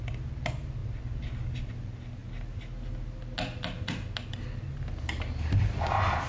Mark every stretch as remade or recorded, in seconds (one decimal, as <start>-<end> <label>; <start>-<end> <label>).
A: 0.0-6.3 recorded